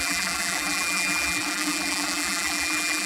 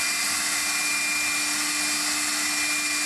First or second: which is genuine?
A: second